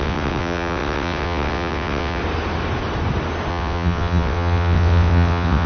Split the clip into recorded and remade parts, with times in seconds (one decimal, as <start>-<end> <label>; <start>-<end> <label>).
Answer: 0.0-2.2 remade; 2.2-3.5 recorded; 3.5-5.7 remade